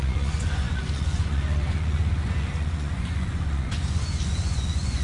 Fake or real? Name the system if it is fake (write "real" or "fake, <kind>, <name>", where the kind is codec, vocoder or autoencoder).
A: fake, vocoder, Vocos